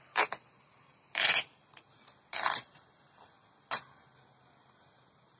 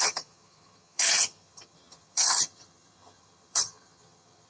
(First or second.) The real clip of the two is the first